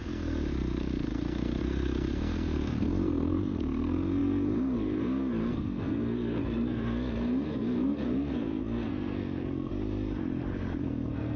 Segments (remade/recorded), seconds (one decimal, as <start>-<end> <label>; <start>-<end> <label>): 0.0-9.7 remade; 9.7-10.8 recorded; 10.8-11.4 remade